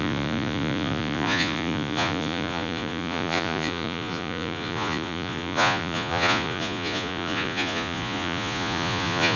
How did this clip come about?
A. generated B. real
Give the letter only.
A